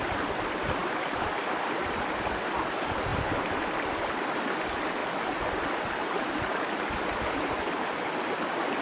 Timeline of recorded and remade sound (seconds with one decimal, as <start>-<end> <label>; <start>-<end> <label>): 0.0-8.8 recorded